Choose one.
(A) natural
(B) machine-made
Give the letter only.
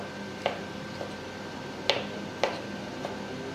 A